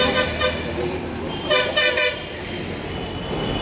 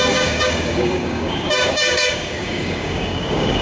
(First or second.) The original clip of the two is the first